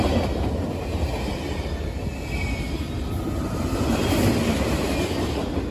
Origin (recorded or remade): recorded